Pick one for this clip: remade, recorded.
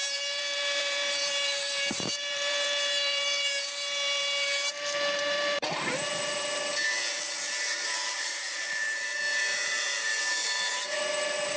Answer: remade